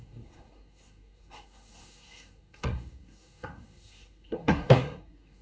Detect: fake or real fake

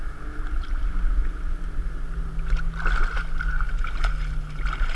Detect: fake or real real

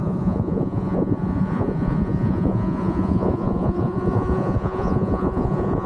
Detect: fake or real fake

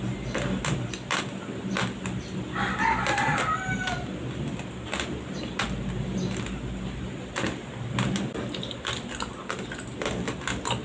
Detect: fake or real fake